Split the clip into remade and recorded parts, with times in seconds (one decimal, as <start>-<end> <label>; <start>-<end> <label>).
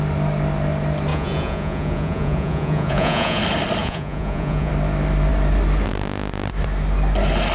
0.0-1.1 recorded; 1.1-3.4 remade; 3.4-3.8 recorded; 3.8-4.7 remade; 4.7-7.5 recorded